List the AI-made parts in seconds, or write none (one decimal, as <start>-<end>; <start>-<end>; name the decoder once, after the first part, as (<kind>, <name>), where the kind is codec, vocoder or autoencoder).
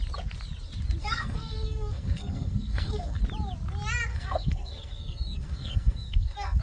1.0-3.2 (codec, SNAC); 4.1-6.6